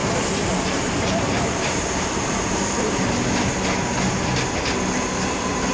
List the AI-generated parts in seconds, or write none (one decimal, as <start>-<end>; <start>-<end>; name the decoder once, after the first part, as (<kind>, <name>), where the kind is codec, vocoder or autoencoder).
0.0-3.0 (vocoder, BigVGAN v2)